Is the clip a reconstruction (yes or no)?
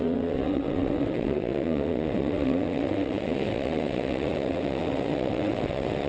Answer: yes